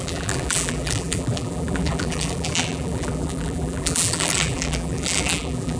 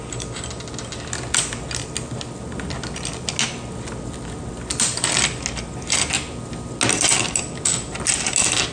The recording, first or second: second